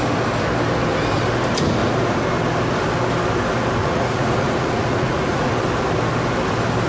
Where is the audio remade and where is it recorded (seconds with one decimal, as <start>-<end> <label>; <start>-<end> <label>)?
0.0-3.8 recorded; 3.8-5.5 remade; 5.5-6.9 recorded